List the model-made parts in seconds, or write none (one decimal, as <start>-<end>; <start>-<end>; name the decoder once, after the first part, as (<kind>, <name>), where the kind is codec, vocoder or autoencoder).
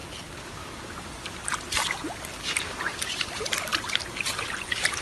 2.6-3.7 (vocoder, BigVGAN v2); 4.3-5.0